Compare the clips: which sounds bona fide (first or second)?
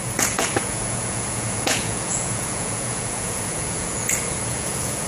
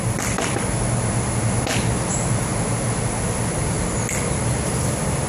second